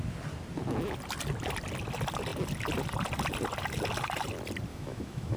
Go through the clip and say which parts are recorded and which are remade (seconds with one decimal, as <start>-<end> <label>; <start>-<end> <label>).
0.0-4.7 recorded; 4.7-5.4 remade